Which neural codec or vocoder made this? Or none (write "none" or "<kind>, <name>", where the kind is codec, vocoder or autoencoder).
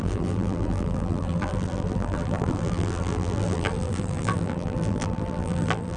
vocoder, BigVGAN v2